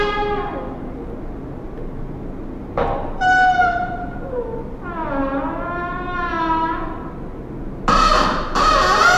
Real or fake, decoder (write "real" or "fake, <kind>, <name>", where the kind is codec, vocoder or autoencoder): real